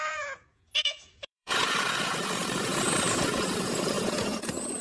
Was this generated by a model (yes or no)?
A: yes